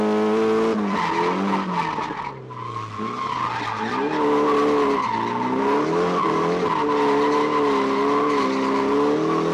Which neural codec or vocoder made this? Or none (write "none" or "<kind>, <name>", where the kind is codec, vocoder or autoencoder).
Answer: none